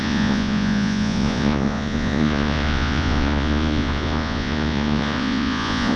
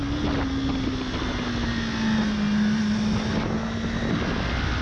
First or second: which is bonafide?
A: second